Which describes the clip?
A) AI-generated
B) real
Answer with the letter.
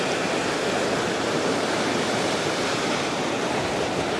A